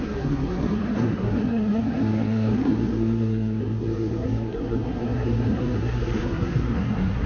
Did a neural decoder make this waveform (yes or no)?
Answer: yes